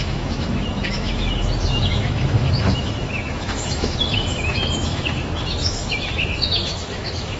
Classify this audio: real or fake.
fake